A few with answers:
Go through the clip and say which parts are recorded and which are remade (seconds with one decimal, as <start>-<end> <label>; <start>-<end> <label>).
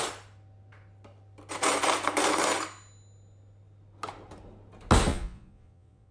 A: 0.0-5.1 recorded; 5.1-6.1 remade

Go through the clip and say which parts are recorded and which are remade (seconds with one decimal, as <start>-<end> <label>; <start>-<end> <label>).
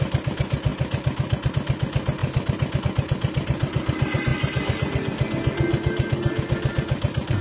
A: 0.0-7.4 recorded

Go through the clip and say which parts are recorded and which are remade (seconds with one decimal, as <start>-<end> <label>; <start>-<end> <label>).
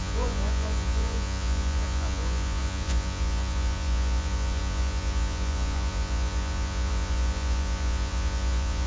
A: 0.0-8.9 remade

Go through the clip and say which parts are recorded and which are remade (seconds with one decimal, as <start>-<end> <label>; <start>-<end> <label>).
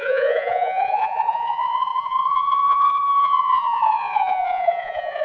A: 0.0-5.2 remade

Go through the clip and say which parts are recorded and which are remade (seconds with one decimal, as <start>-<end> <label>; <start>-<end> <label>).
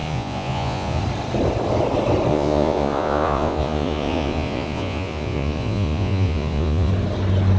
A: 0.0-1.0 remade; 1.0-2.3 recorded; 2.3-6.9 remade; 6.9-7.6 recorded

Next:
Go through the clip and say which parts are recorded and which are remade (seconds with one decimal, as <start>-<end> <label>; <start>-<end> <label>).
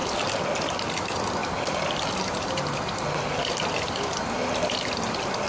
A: 0.0-5.5 recorded